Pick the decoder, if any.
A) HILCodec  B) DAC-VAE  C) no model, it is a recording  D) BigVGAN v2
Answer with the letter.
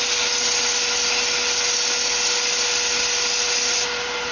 C